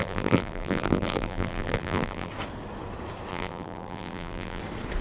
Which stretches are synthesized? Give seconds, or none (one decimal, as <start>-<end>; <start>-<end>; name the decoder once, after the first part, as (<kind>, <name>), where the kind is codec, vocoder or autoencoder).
0.0-2.3 (vocoder, BigVGAN v2); 3.3-4.6

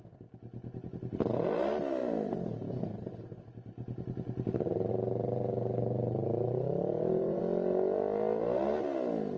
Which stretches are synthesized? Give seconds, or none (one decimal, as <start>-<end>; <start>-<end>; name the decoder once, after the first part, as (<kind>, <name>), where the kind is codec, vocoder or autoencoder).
2.0-3.1 (vocoder, BigVGAN v2); 4.9-7.4

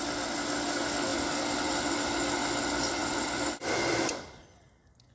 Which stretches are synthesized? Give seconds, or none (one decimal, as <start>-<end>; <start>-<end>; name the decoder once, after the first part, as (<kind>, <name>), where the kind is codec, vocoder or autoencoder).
1.1-2.0 (vocoder, BigVGAN v2); 3.0-4.4

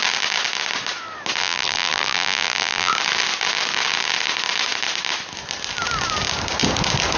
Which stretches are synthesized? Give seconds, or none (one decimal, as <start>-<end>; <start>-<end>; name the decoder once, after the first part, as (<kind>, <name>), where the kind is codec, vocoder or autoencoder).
1.4-2.9 (vocoder, BigVGAN v2)

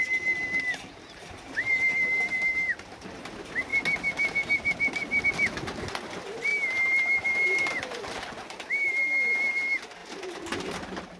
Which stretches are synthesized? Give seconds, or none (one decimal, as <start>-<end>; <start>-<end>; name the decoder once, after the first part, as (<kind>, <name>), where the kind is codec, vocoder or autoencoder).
1.7-3.1 (vocoder, BigVGAN v2); 6.5-8.9; 10.0-10.7

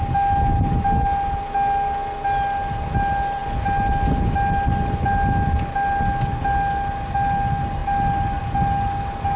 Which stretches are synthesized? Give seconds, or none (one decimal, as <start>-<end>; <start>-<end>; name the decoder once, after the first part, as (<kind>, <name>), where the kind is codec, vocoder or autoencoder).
none

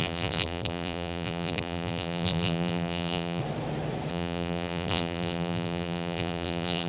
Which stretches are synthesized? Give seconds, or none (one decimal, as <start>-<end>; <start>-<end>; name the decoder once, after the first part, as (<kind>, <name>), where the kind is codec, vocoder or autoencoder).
0.0-3.4 (vocoder, BigVGAN v2); 4.1-6.9

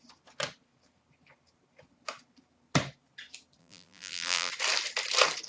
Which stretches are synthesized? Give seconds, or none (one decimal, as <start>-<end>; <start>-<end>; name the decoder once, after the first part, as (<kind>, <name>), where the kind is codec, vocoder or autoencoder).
3.6-4.5 (vocoder, BigVGAN v2)